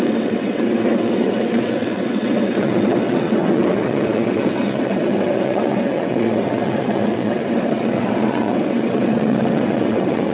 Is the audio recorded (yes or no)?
no